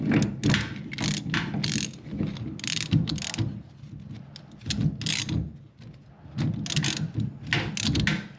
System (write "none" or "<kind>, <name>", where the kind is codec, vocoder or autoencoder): none